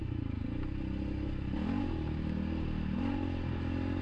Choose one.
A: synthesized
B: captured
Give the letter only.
B